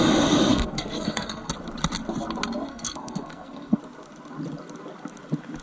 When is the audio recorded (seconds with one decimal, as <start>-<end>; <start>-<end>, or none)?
0.0-0.5; 1.5-2.7; 3.8-5.6